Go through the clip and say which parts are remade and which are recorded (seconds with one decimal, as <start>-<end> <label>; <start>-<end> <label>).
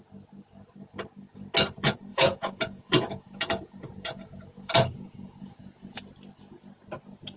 0.0-2.1 recorded; 2.1-6.0 remade; 6.0-7.4 recorded